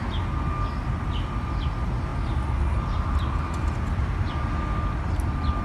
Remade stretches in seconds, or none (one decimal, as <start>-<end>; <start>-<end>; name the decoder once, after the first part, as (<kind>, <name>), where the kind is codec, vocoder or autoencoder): none